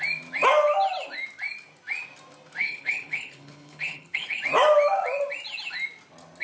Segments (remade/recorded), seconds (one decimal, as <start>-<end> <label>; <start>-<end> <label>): 0.0-2.6 recorded; 2.6-4.4 remade; 4.4-6.4 recorded